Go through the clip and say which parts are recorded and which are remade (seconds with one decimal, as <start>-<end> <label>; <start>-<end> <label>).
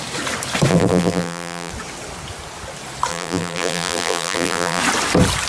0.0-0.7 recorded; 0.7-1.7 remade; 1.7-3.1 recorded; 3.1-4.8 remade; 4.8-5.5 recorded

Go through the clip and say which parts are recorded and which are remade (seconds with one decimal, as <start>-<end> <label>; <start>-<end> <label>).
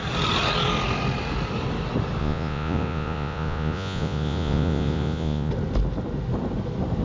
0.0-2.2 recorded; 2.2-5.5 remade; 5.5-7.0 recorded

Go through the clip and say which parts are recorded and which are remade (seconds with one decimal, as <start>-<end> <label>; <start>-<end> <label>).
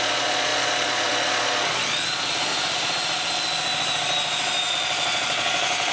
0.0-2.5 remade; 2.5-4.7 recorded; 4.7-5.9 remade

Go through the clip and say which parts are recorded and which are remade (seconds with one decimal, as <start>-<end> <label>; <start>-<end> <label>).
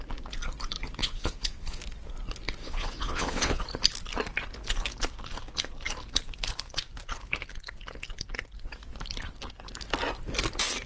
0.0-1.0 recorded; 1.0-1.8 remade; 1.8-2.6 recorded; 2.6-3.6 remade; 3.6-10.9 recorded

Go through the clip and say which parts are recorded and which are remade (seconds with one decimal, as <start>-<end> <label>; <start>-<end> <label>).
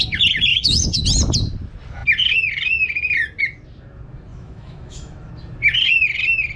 0.0-0.5 recorded; 0.5-1.0 remade; 1.0-4.3 recorded; 4.3-5.3 remade; 5.3-6.6 recorded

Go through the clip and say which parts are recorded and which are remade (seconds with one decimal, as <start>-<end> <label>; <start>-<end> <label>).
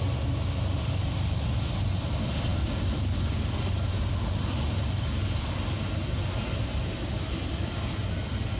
0.0-8.6 recorded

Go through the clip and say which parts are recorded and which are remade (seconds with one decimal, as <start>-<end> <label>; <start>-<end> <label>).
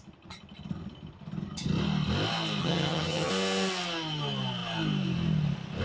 0.0-2.6 recorded; 2.6-3.3 remade; 3.3-5.8 recorded